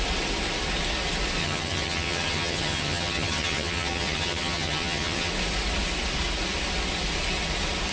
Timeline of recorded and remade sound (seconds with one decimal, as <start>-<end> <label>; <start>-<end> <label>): 0.0-1.4 recorded; 1.4-5.3 remade; 5.3-7.9 recorded